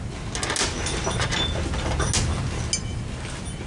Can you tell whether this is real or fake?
real